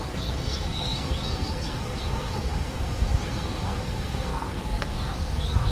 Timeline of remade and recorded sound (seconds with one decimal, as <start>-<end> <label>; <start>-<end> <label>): 0.0-5.7 remade